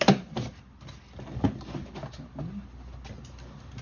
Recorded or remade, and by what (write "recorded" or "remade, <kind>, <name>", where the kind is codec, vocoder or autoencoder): recorded